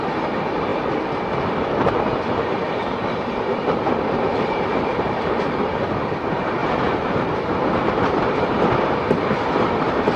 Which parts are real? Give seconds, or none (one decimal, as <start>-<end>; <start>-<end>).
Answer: 0.0-6.6; 7.3-10.2